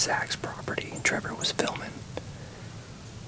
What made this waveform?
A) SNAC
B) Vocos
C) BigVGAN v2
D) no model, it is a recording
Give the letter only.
D